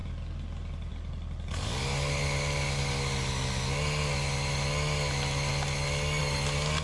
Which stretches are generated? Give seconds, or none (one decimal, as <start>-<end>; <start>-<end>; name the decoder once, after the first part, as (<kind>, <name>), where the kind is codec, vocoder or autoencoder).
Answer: none